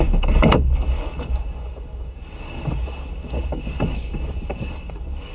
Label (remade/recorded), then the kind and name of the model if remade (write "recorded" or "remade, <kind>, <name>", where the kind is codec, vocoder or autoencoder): remade, codec, DAC